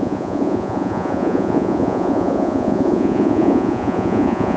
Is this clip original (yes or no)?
no